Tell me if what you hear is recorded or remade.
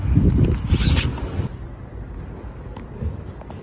recorded